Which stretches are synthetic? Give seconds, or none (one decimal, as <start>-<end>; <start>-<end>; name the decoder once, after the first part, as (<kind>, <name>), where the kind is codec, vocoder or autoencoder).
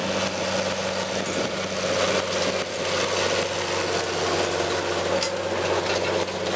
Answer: none